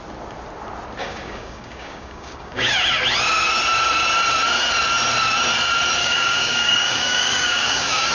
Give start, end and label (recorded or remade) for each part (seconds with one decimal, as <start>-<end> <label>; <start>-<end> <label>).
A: 0.0-1.0 recorded; 1.0-2.7 remade; 2.7-6.0 recorded; 6.0-8.1 remade